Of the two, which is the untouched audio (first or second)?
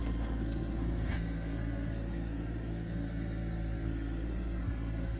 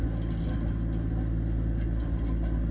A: second